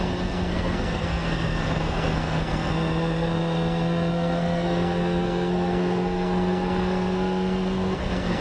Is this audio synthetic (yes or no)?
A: yes